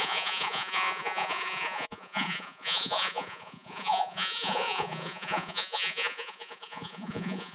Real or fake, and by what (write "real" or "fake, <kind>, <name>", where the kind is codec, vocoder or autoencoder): fake, vocoder, Vocos